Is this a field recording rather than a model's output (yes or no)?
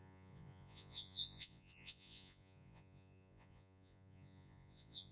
no